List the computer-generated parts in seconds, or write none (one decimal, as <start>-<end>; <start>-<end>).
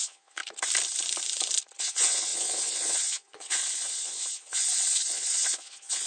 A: 0.0-0.4; 1.8-6.1